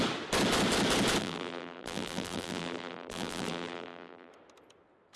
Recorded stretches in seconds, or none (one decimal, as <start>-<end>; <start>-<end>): 0.0-1.2; 4.3-5.2